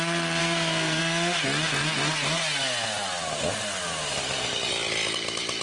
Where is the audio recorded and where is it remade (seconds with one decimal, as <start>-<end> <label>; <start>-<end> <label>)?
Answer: 0.0-0.4 recorded; 0.4-1.0 remade; 1.0-5.6 recorded